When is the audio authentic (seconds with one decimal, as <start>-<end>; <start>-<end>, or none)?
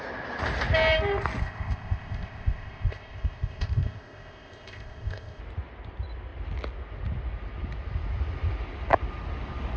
0.0-1.4; 5.4-9.8